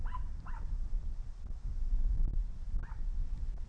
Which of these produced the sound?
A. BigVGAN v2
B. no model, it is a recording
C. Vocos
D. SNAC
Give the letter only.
B